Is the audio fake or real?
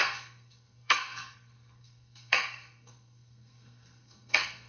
fake